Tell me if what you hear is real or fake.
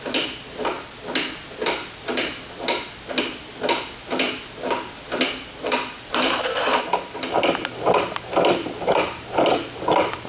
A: real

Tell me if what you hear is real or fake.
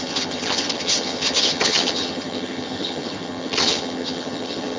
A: fake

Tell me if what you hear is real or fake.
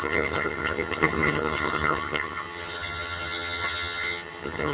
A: fake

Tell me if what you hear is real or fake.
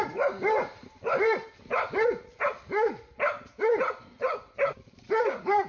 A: real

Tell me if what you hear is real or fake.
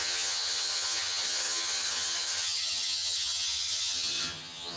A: fake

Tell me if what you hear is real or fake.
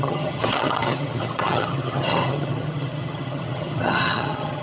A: fake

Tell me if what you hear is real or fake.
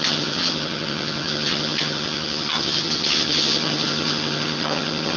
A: fake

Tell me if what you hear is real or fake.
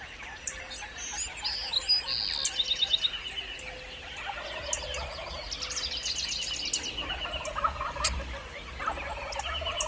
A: real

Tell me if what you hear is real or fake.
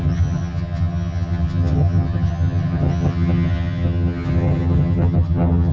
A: fake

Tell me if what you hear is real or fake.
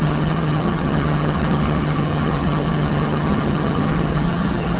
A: fake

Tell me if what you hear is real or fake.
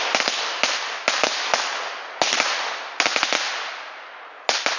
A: real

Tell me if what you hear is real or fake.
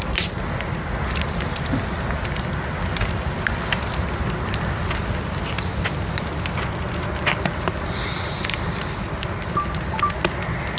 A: real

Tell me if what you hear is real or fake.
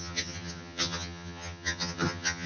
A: fake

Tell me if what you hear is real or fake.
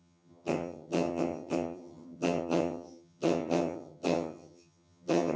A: fake